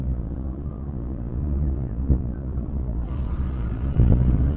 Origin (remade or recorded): remade